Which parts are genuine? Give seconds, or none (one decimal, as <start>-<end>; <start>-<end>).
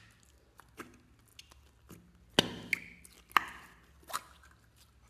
0.0-5.1